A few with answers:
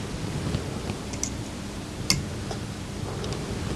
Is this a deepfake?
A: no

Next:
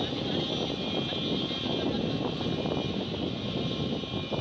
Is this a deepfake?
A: no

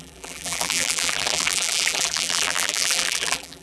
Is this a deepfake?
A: yes